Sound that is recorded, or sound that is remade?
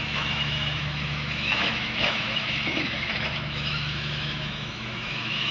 remade